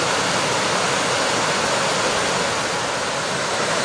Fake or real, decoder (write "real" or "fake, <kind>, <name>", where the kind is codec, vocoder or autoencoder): real